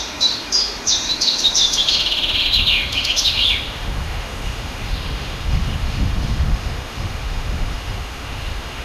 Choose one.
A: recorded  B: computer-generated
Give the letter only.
B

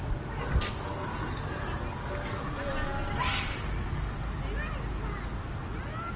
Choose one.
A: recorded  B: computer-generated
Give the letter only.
A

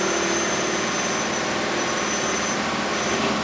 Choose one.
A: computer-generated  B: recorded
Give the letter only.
B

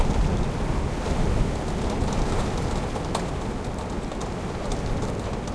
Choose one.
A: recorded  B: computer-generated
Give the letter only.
A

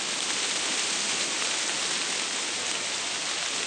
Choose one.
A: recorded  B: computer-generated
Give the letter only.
A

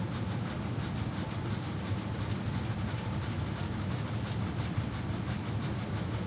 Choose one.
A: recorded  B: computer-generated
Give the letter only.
A